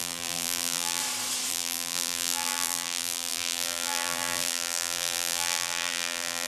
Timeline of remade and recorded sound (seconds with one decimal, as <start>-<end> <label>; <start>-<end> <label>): 0.0-1.0 remade; 1.0-1.5 recorded; 1.5-6.5 remade